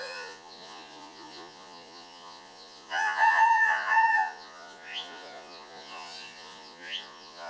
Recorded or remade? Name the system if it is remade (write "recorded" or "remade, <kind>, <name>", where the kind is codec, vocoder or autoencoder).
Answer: remade, vocoder, Vocos